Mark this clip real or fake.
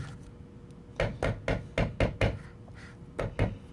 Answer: real